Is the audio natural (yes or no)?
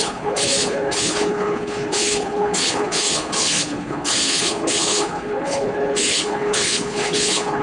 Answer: no